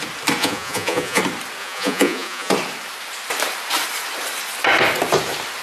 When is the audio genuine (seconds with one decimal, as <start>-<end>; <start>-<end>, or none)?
0.0-0.4; 1.2-1.6; 2.5-5.6